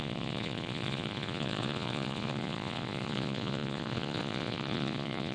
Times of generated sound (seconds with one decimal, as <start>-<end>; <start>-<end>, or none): 0.0-5.3